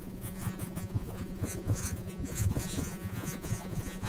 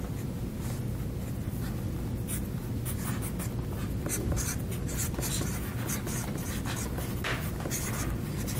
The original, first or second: second